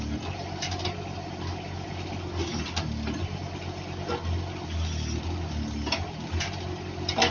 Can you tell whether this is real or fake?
real